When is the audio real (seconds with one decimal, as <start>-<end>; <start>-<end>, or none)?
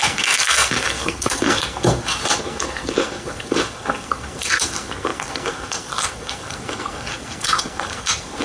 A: none